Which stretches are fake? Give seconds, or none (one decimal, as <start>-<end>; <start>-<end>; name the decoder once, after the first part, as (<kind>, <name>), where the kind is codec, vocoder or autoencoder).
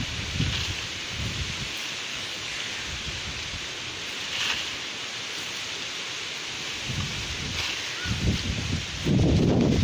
2.1-2.7 (codec, DAC)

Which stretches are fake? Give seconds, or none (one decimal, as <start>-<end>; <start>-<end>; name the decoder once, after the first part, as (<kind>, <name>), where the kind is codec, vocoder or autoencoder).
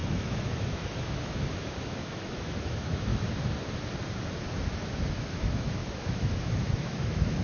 0.0-3.1 (autoencoder, DAC-VAE); 5.1-7.4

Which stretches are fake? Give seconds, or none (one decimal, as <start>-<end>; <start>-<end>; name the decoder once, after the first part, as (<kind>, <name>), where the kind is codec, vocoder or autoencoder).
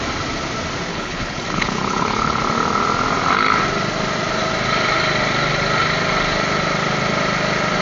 0.9-2.4 (codec, HILCodec)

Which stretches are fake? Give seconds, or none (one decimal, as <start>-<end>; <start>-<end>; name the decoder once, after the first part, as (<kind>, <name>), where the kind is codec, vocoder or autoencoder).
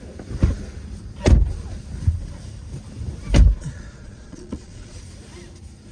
3.6-5.0 (vocoder, Vocos)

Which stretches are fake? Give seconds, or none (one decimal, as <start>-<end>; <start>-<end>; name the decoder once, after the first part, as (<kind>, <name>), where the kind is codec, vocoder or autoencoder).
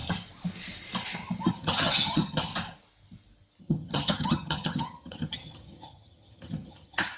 1.5-2.5 (vocoder, HiFi-GAN); 3.6-7.2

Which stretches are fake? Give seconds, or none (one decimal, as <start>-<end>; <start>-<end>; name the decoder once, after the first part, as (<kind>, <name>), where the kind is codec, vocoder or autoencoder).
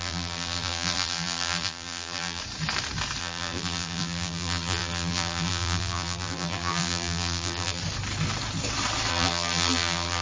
0.0-2.4 (vocoder, BigVGAN v2); 3.2-7.8; 9.1-10.2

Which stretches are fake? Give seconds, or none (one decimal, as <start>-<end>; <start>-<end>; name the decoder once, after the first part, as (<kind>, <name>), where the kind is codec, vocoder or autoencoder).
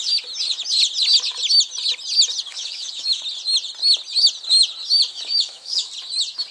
2.5-3.2 (autoencoder, DAC-VAE); 5.1-5.9